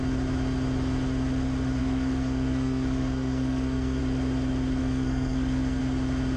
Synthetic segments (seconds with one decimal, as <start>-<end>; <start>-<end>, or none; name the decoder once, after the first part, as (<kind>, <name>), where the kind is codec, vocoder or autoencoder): 1.8-4.0 (codec, SNAC); 4.8-5.8